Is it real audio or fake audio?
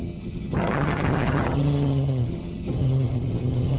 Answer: fake